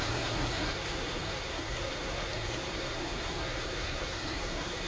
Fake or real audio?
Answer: fake